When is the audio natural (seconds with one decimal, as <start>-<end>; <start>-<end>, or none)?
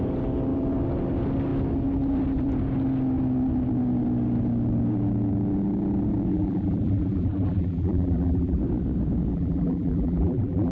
0.0-6.3; 8.6-9.3